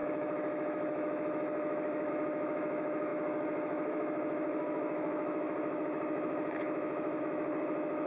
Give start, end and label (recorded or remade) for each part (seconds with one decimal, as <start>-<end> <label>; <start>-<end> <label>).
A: 0.0-8.1 remade